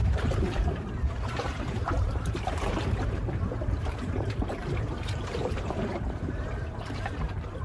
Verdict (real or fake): fake